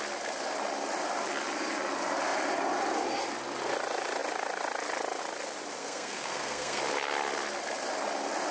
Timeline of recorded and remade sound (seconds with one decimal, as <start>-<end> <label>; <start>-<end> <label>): 0.0-5.8 recorded; 5.8-6.8 remade; 6.8-8.5 recorded